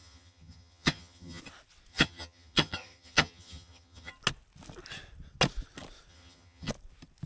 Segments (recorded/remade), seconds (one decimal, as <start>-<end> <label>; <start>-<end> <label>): 0.0-1.4 remade; 1.4-1.9 recorded; 1.9-4.1 remade; 4.1-6.1 recorded; 6.1-6.7 remade; 6.7-7.3 recorded